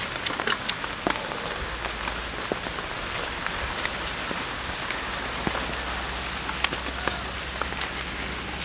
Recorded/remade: recorded